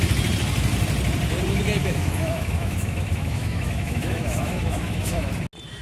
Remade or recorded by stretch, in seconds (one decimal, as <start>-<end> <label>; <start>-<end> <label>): 0.0-1.8 recorded; 1.8-5.3 remade; 5.3-5.8 recorded